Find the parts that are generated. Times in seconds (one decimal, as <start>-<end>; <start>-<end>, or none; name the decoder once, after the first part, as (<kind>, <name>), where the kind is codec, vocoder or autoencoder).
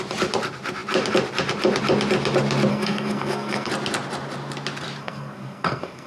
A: 2.7-3.7 (codec, SNAC); 5.0-6.1